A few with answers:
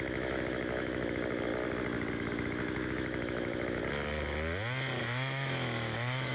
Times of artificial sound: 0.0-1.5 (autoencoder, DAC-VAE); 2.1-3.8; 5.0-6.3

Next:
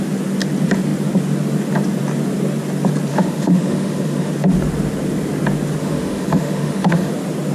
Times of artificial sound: 3.1-4.3 (autoencoder, DAC-VAE); 5.8-7.1

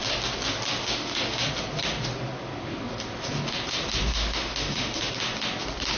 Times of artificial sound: 0.8-1.5 (autoencoder, DAC-VAE); 4.1-5.1

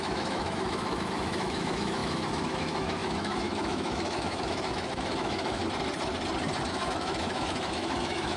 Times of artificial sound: 0.0-5.6 (autoencoder, DAC-VAE); 6.7-8.4

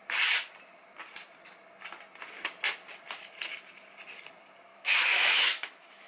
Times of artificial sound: 4.7-6.1 (autoencoder, DAC-VAE)

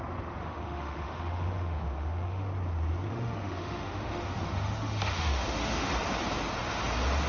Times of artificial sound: 0.4-2.5 (autoencoder, DAC-VAE); 3.1-5.9

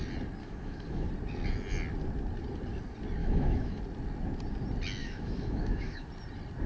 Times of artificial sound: 0.4-1.1 (autoencoder, DAC-VAE); 3.2-3.8; 5.0-6.1